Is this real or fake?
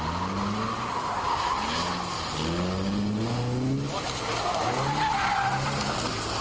real